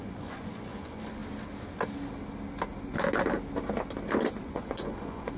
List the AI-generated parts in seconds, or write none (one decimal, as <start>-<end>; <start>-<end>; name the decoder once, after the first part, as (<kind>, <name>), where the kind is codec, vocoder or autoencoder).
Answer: 0.0-1.2 (vocoder, Vocos); 4.4-5.4